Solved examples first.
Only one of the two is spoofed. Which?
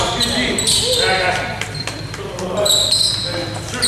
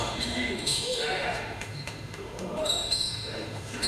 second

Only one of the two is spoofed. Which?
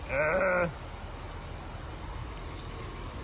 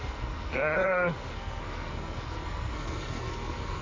second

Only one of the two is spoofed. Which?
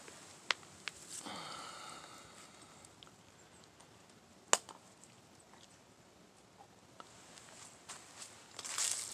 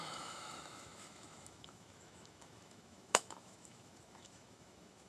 second